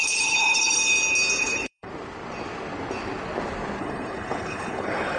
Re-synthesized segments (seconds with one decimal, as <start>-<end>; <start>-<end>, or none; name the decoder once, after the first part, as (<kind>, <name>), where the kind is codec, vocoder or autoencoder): 0.0-0.8 (codec, HILCodec); 1.4-1.9; 3.8-5.2